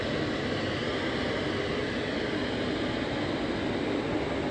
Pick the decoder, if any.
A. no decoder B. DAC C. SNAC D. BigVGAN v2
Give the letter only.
A